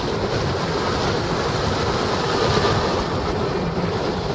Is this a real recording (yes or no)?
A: yes